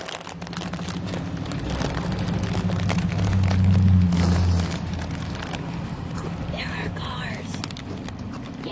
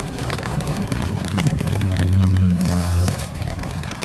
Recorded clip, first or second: first